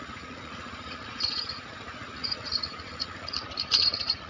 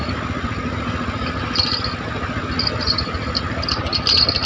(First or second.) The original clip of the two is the second